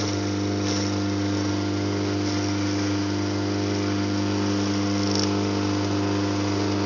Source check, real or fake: real